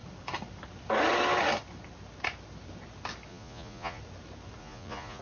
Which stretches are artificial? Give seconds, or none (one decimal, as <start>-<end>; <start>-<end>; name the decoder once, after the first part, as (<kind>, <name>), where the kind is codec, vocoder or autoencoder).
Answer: 3.3-4.0 (vocoder, Vocos); 4.6-5.2